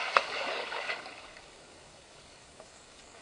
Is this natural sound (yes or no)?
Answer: no